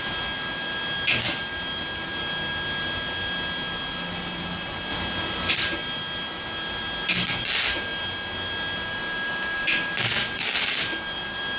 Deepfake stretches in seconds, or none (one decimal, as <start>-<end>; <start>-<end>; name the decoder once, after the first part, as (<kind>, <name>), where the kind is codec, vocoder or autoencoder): none